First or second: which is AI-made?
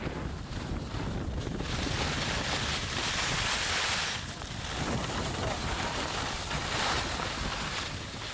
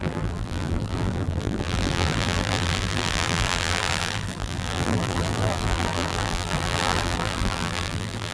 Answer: second